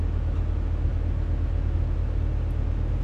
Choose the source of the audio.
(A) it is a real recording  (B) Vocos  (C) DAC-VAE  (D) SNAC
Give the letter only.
A